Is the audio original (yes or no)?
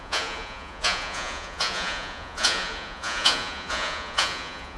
no